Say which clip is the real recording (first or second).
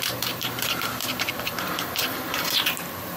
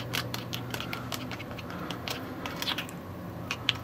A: second